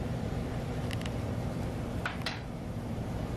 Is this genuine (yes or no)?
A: no